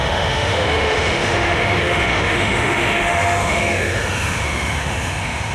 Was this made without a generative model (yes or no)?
no